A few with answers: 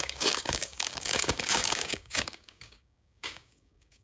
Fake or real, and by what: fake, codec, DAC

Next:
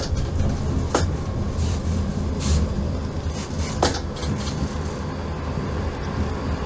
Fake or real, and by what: real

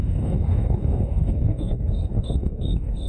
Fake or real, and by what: fake, codec, DAC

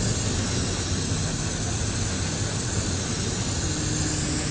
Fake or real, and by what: real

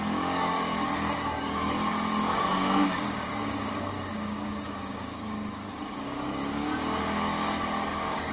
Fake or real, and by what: fake, codec, DAC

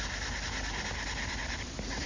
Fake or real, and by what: real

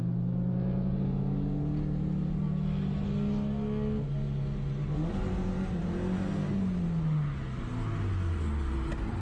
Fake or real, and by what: real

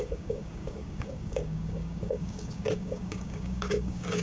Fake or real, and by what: fake, codec, DAC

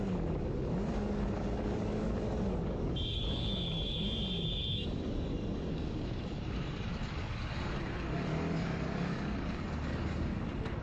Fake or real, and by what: fake, codec, DAC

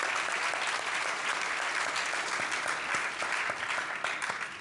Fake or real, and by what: real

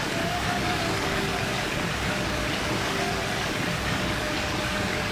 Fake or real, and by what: fake, codec, DAC